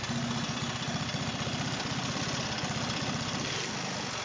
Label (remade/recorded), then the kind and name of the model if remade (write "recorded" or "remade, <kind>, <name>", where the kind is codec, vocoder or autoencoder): recorded